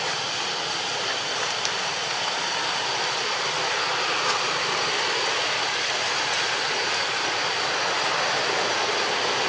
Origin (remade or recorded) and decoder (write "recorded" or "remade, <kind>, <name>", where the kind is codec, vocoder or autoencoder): recorded